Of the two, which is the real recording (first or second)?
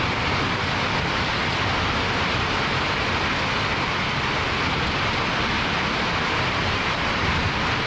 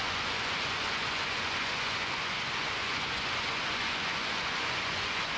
first